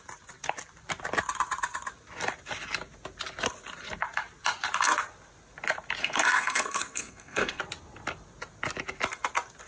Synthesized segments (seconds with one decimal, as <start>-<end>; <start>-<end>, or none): 6.0-7.6